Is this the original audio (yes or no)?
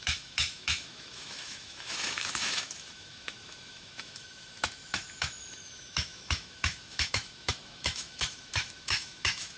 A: no